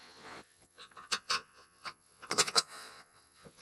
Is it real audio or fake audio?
fake